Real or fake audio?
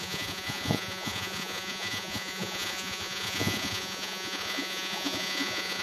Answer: fake